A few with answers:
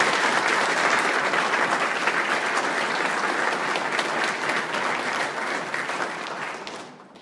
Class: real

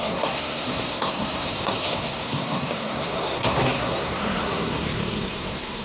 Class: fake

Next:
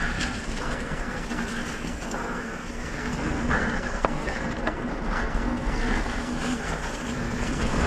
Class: fake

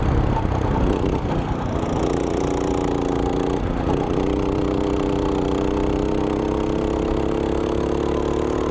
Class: real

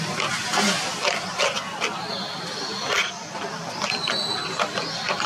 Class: fake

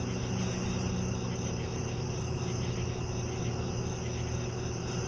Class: real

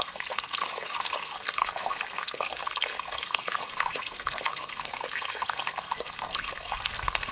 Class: fake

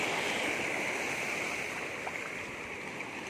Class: real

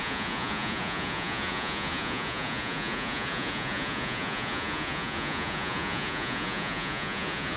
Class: fake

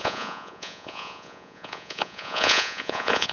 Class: fake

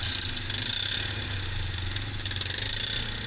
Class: real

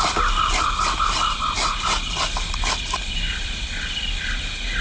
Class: real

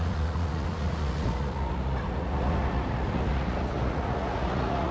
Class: fake